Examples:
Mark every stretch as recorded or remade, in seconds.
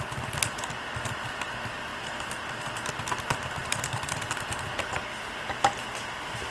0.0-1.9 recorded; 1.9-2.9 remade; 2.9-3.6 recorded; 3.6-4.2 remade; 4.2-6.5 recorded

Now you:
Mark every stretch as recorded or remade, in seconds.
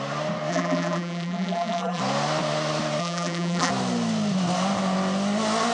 0.0-0.5 recorded; 0.5-2.0 remade; 2.0-3.0 recorded; 3.0-3.7 remade; 3.7-5.7 recorded